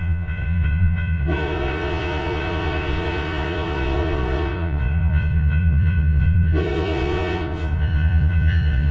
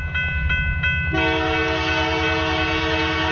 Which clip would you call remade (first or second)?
first